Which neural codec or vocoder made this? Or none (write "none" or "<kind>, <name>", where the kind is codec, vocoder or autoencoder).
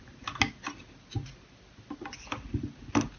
none